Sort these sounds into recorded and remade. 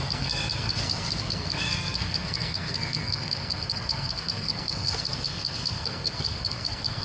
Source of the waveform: remade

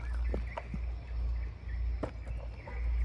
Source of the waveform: recorded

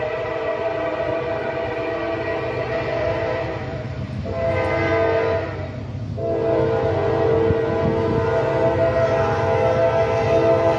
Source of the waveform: recorded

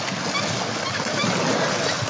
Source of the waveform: recorded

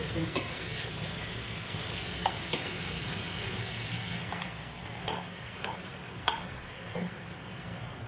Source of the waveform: remade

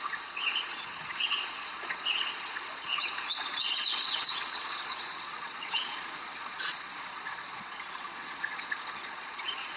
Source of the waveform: remade